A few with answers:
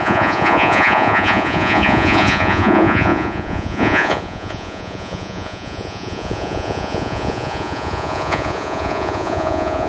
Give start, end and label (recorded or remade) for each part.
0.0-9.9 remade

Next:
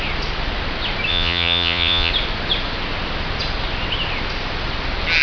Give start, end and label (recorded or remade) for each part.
0.0-1.1 recorded; 1.1-2.1 remade; 2.1-5.2 recorded

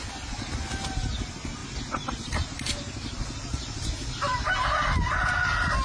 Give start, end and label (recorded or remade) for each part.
0.0-5.8 recorded

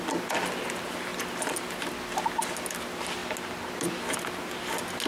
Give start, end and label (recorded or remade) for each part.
0.0-5.1 recorded